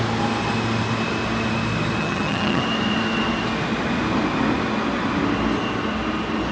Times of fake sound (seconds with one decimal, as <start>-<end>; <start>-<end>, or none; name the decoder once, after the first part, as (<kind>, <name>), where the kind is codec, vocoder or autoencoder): 2.0-2.6 (vocoder, HiFi-GAN)